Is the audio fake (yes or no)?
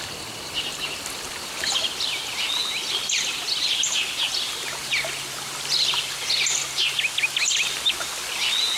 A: no